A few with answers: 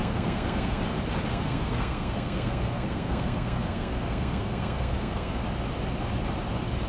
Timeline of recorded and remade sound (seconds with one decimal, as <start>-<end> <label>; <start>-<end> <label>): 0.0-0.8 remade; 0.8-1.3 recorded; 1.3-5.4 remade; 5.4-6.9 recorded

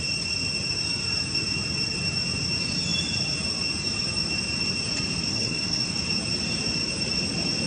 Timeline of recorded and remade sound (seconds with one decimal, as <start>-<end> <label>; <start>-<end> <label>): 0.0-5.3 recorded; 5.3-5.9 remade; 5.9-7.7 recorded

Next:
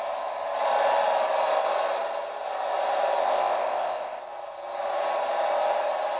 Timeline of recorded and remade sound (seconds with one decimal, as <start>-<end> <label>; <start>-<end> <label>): 0.0-3.2 recorded; 3.2-4.2 remade; 4.2-6.2 recorded